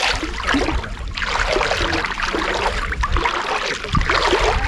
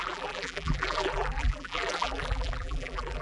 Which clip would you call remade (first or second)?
second